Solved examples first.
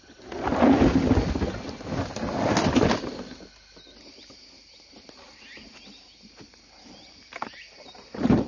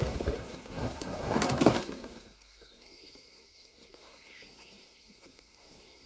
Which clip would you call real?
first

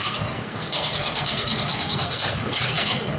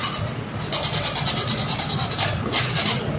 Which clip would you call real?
second